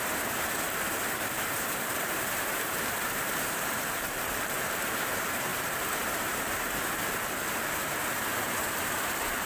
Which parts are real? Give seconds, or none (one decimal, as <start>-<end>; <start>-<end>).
none